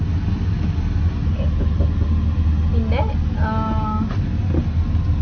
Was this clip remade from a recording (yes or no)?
no